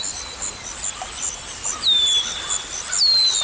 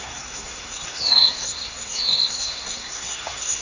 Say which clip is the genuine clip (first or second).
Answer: first